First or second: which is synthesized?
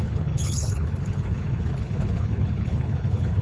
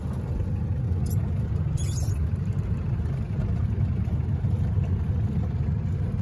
first